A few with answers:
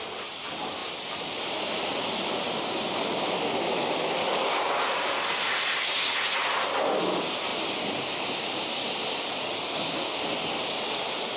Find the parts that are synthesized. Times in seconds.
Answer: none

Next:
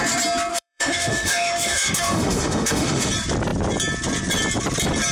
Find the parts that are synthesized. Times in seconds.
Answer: 0.5-3.1 (autoencoder, DAC-VAE)

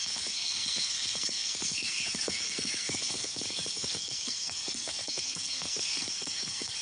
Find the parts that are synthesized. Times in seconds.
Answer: 0.0-6.8 (codec, SNAC)

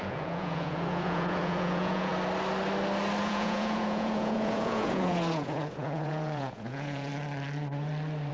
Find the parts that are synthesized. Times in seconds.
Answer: 0.0-2.1 (vocoder, Vocos); 3.2-7.1